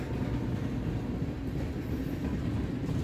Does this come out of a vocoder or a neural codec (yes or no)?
no